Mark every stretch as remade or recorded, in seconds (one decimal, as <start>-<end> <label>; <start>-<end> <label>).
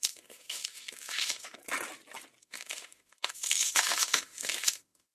0.0-1.6 remade; 1.6-2.4 recorded; 2.4-5.1 remade